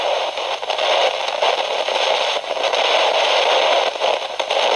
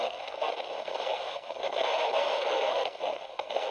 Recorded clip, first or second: first